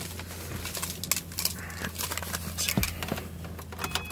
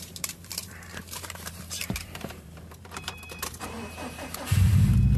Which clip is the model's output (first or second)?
second